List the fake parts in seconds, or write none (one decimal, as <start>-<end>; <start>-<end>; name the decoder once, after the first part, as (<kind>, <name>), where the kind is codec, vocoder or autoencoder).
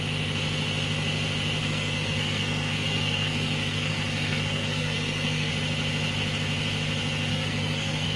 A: 1.6-5.5 (codec, SNAC); 7.3-8.2